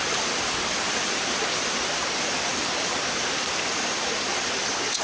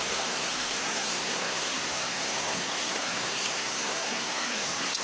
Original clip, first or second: first